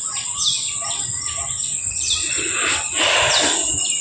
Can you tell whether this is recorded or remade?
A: recorded